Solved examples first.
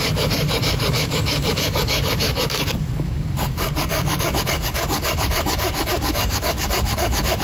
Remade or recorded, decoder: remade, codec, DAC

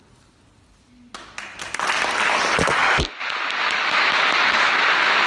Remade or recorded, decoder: recorded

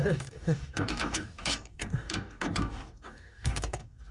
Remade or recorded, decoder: remade, codec, DAC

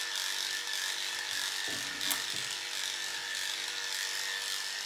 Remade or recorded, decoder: recorded